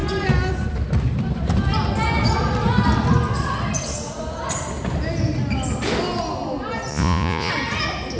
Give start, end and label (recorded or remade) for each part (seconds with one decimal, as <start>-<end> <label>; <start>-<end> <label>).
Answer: 0.0-6.9 recorded; 6.9-7.5 remade; 7.5-8.2 recorded